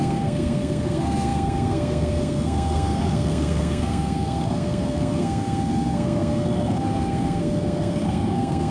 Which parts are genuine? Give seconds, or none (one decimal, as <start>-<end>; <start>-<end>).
none